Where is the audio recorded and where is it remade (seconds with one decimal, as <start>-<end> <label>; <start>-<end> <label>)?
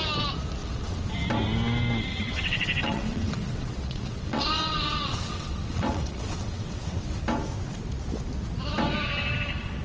0.0-0.6 recorded; 0.6-1.1 remade; 1.1-2.1 recorded; 2.1-7.2 remade; 7.2-9.8 recorded